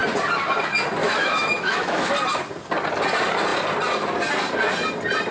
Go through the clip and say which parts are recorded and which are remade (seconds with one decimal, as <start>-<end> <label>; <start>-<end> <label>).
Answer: 0.0-1.0 recorded; 1.0-2.1 remade; 2.1-5.3 recorded